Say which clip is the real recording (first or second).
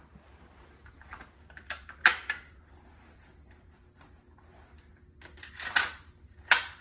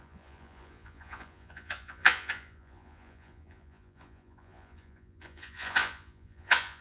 first